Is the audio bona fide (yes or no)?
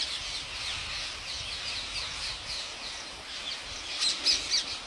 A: yes